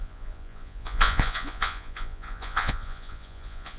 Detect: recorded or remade remade